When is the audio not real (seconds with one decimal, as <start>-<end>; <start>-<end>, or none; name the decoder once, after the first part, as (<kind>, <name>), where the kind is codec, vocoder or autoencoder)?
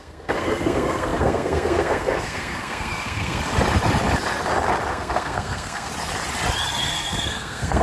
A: 0.0-3.4 (codec, SNAC); 4.9-5.9; 6.9-7.8